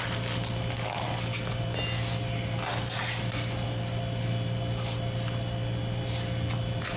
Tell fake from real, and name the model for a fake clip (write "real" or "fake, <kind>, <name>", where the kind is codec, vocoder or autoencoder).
real